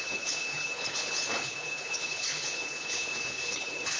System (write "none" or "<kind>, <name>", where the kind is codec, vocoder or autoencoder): codec, HILCodec